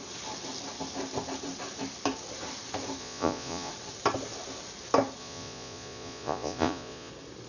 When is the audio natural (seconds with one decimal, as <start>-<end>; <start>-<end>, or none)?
0.0-3.0; 3.7-5.2; 7.1-7.5